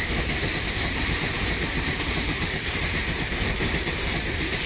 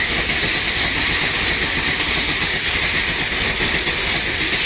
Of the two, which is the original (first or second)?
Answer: second